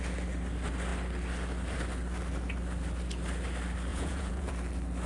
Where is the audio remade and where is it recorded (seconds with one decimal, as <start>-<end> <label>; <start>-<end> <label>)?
0.0-3.9 recorded; 3.9-4.5 remade; 4.5-5.1 recorded